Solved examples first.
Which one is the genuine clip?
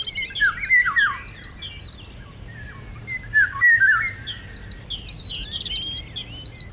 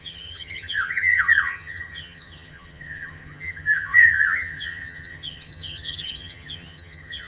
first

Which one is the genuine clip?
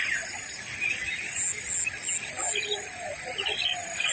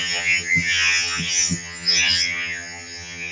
first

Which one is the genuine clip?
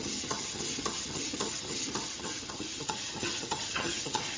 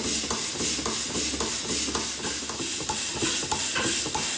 second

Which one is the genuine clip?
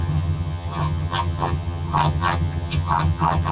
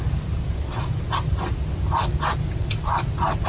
second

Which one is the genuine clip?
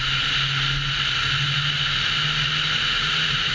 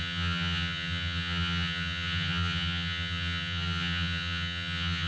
first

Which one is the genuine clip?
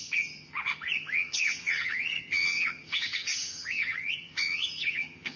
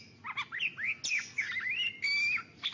second